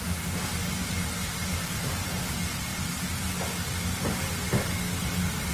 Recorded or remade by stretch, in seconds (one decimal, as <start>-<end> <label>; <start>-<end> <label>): 0.0-1.2 recorded; 1.2-1.9 remade; 1.9-2.7 recorded; 2.7-3.3 remade; 3.3-5.5 recorded